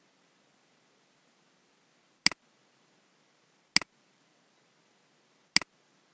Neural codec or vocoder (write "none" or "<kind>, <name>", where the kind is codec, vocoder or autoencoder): none